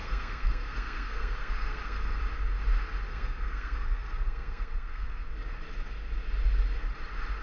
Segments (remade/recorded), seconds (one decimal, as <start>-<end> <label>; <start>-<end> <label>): 0.0-2.2 remade; 2.2-3.1 recorded; 3.1-5.5 remade; 5.5-7.4 recorded